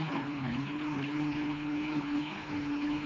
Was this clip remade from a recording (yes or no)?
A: yes